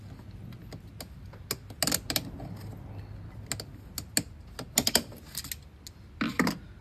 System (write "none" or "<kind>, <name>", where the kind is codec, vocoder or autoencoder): none